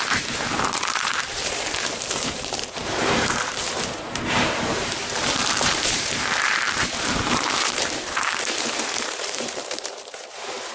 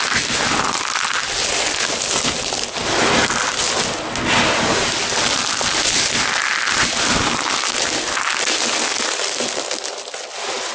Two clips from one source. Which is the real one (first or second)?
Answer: second